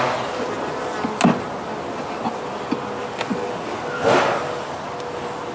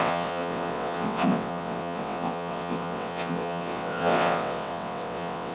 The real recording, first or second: first